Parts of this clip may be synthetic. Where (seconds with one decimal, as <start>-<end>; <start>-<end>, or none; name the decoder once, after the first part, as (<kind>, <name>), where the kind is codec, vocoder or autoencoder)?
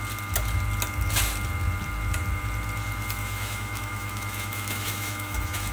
3.2-5.7 (autoencoder, DAC-VAE)